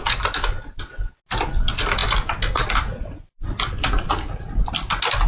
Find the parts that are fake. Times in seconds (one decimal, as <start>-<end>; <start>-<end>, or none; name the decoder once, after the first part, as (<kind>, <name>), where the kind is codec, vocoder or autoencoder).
none